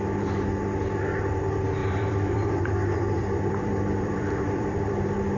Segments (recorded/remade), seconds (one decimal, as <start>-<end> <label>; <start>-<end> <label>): 0.0-1.8 recorded; 1.8-4.9 remade; 4.9-5.4 recorded